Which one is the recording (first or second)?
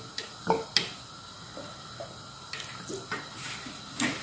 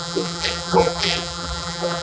first